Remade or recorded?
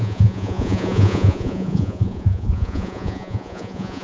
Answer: remade